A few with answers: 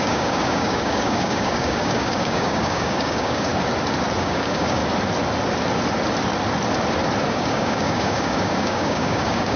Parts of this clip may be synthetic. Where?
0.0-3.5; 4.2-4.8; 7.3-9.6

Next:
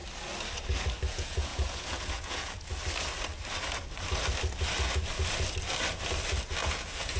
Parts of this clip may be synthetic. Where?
1.1-2.7; 6.7-7.2

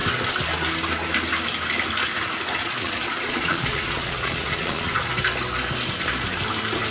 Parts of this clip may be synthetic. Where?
2.6-5.1

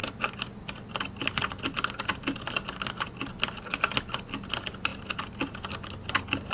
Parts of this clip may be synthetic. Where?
none

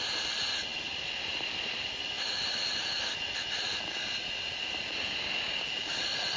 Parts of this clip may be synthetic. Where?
4.9-6.0

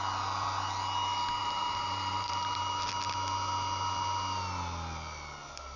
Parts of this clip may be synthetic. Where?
1.4-2.9

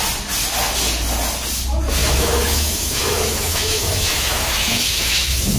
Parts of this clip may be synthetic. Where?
2.0-5.6

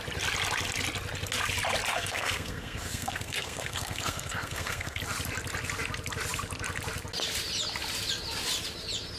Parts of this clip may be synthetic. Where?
1.9-5.0